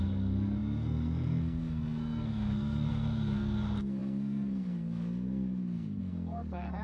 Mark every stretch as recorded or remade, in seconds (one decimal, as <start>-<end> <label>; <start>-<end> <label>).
0.0-6.8 remade